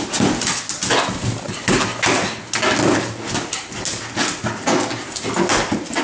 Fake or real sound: real